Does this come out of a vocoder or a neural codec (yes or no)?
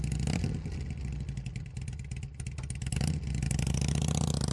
no